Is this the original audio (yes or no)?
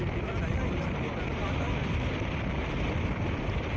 yes